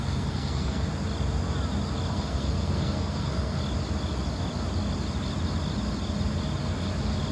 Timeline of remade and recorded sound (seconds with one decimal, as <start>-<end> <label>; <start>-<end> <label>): 0.0-0.9 remade; 0.9-2.1 recorded; 2.1-3.6 remade; 3.6-7.3 recorded